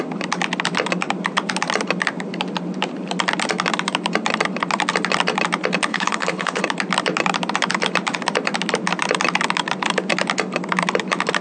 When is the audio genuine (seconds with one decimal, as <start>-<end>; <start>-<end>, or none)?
0.0-5.9; 6.6-11.4